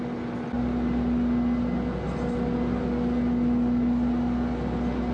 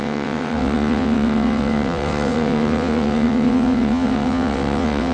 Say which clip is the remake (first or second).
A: second